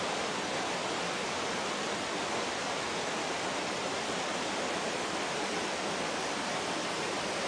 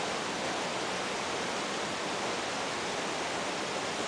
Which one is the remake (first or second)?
first